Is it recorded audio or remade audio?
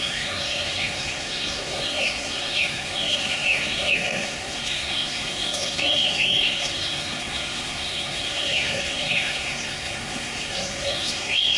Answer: remade